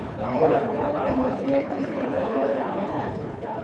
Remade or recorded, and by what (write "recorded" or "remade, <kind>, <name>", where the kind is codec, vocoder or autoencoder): remade, codec, HILCodec